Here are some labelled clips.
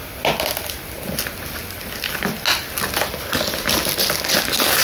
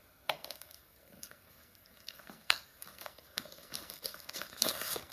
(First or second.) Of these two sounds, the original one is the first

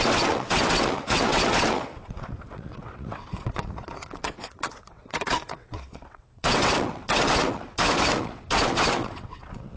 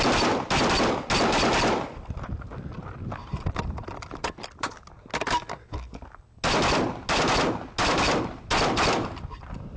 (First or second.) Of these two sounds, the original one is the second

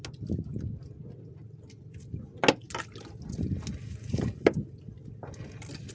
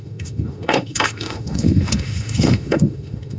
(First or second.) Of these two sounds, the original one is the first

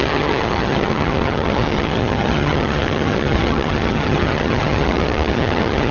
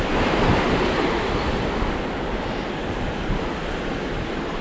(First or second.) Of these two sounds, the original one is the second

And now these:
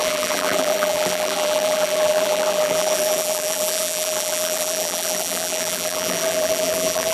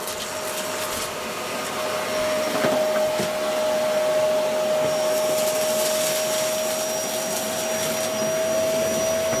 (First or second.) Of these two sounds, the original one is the second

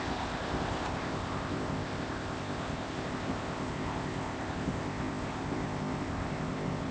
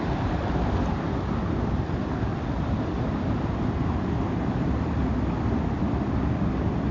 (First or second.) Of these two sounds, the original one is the second